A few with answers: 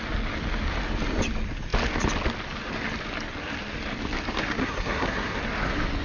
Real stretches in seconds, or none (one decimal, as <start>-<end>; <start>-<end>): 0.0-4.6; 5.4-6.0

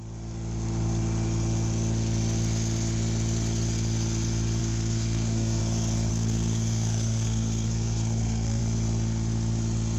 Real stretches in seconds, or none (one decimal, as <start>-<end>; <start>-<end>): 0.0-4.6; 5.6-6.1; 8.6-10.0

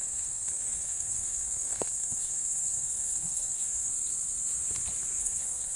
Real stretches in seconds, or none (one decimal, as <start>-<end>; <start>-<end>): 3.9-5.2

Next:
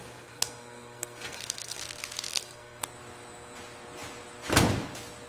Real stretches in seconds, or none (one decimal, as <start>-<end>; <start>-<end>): 1.8-2.3; 2.8-5.3